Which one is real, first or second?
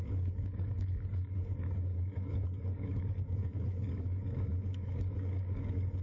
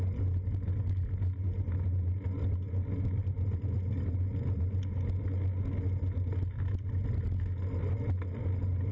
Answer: second